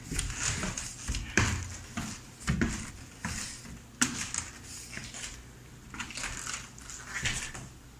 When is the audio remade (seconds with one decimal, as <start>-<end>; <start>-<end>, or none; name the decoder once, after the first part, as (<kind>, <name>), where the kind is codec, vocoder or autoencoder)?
none